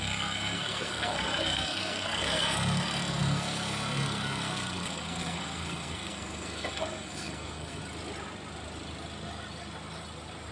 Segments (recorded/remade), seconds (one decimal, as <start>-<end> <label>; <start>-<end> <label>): 0.0-7.8 remade; 7.8-10.5 recorded

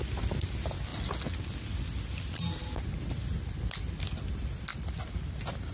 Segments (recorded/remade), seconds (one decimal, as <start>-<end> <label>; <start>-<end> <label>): 0.0-5.7 recorded